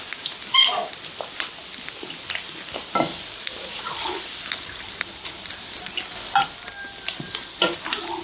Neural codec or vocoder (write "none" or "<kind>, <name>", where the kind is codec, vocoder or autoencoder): none